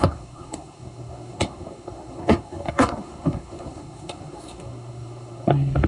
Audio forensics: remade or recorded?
remade